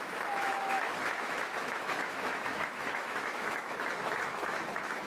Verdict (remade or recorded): remade